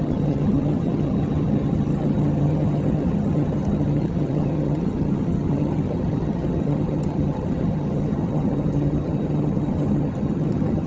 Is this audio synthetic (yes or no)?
yes